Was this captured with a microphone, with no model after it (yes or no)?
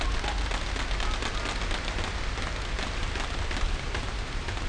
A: yes